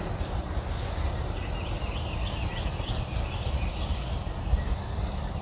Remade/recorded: recorded